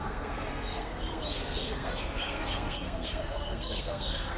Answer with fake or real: fake